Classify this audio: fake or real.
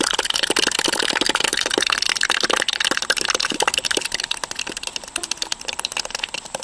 real